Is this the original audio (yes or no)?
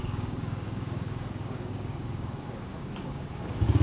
no